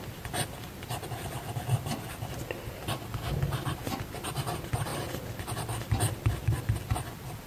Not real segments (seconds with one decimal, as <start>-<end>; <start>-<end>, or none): none